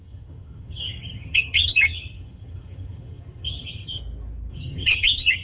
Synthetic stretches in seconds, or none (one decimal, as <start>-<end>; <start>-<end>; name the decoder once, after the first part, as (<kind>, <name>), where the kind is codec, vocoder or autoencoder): 0.0-4.0 (vocoder, HiFi-GAN); 4.5-5.4